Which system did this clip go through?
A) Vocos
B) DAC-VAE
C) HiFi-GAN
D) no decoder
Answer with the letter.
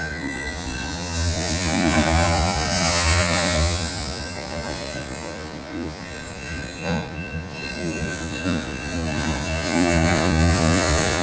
A